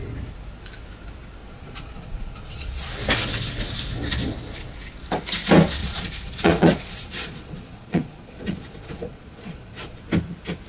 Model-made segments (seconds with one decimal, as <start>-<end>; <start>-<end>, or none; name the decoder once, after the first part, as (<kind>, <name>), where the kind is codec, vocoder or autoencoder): 1.4-2.9 (vocoder, Vocos); 5.8-10.0